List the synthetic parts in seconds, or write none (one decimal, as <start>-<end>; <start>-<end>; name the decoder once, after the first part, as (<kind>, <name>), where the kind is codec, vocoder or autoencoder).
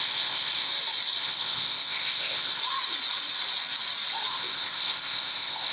0.0-0.7 (codec, ZipCodec); 1.2-2.6; 4.3-5.7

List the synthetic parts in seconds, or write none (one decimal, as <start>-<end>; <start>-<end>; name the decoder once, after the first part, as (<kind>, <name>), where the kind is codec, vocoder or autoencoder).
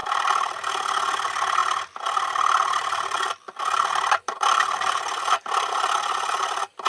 0.0-0.7 (vocoder, BigVGAN v2); 1.6-5.7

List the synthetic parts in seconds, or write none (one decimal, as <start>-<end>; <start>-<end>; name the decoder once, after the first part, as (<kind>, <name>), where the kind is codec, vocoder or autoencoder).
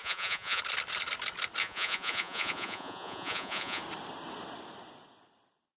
0.0-0.6 (vocoder, Vocos); 1.6-3.8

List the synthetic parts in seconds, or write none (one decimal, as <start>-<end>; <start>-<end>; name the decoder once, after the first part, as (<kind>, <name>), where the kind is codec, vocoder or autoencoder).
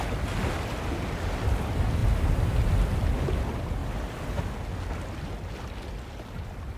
none